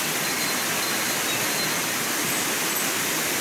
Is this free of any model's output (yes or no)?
yes